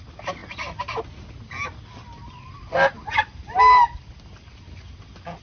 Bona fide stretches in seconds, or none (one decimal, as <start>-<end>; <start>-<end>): 0.0-5.4